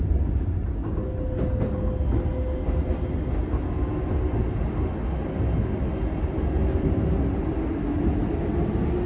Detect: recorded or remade recorded